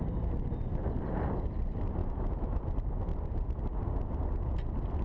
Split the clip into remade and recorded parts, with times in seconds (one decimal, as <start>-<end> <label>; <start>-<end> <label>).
0.0-2.0 recorded; 2.0-2.6 remade; 2.6-5.0 recorded